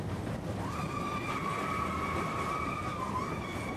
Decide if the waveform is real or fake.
real